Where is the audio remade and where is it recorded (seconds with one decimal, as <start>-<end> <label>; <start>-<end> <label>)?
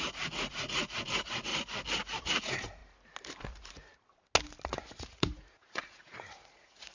0.0-1.5 remade; 1.5-2.4 recorded; 2.4-2.8 remade; 2.8-3.5 recorded; 3.5-3.9 remade; 3.9-4.9 recorded; 4.9-6.9 remade